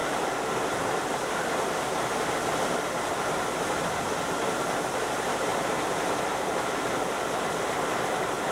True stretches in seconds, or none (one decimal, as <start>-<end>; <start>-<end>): 0.0-8.5